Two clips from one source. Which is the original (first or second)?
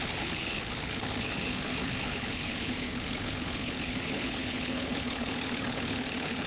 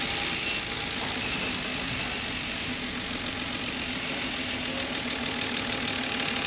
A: second